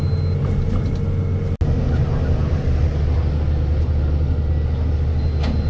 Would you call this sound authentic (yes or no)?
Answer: yes